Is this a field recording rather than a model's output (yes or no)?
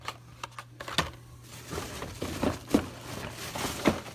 yes